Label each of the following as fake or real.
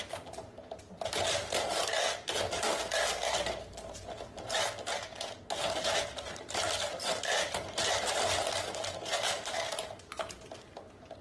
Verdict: real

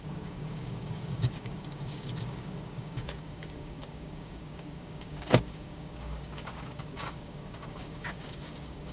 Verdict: fake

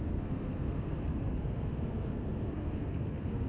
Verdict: fake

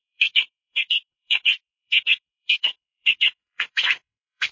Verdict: fake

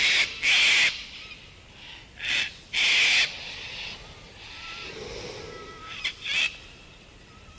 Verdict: real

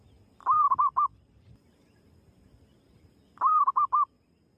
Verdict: real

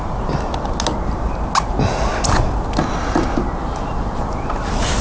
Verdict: real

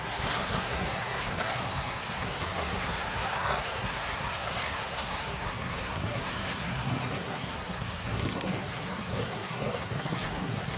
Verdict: fake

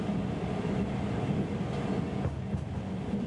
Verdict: real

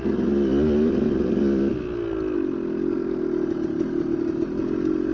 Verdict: real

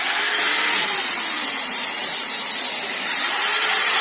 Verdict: real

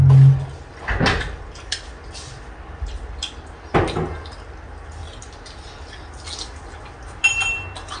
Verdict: real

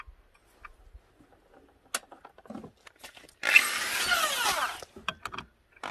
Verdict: real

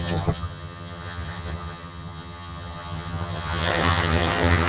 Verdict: fake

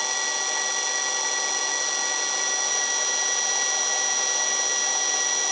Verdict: real